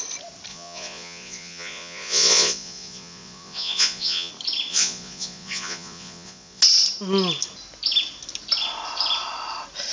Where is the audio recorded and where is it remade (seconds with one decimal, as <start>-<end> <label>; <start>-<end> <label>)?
0.0-0.5 recorded; 0.5-4.3 remade; 4.3-4.7 recorded; 4.7-6.6 remade; 6.6-9.9 recorded